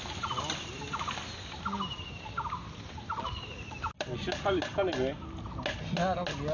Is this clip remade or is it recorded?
recorded